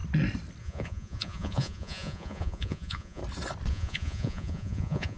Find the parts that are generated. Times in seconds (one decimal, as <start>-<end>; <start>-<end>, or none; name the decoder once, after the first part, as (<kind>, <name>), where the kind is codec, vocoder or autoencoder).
0.6-3.2 (vocoder, Vocos); 3.7-5.2